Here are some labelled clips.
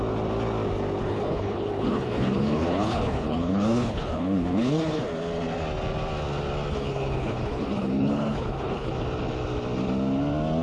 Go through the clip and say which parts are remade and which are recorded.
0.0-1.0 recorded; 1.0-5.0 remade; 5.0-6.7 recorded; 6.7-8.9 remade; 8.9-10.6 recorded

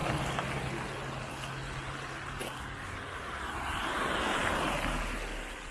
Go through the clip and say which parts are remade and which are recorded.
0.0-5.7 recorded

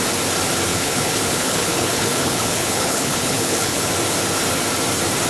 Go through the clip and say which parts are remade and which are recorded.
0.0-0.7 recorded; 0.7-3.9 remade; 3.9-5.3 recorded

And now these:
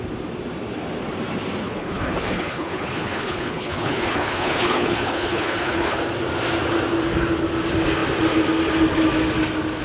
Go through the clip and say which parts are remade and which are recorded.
0.0-1.6 recorded; 1.6-6.0 remade; 6.0-9.8 recorded